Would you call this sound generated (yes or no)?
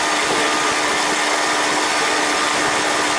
no